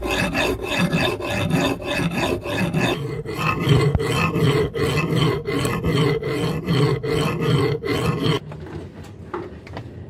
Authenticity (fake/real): real